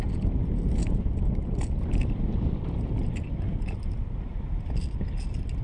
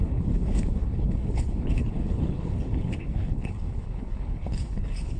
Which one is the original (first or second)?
first